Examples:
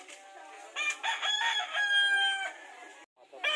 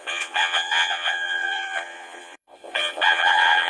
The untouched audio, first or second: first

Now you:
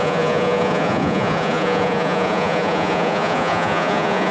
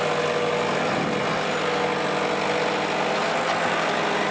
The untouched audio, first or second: second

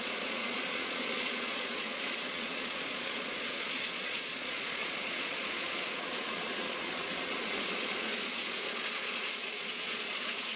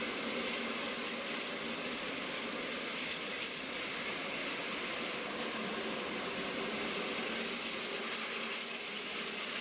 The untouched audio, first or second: second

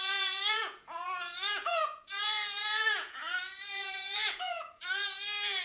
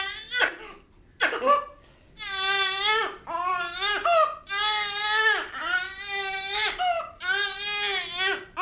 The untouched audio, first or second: second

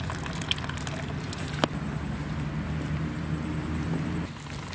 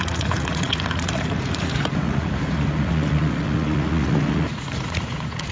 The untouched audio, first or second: first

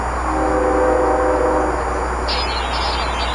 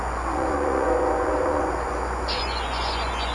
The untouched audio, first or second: first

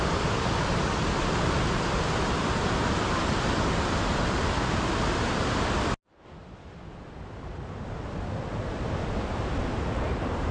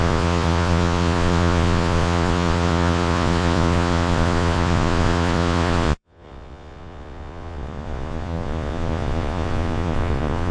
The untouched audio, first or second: first